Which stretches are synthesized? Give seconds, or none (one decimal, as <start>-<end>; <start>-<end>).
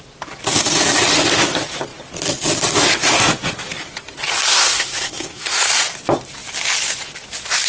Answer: 4.5-5.7